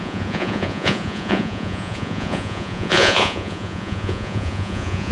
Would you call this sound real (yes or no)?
no